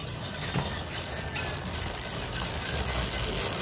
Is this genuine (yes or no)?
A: yes